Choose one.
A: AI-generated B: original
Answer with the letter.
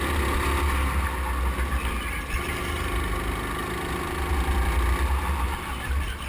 B